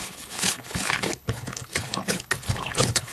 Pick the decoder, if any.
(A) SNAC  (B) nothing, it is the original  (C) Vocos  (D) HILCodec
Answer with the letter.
D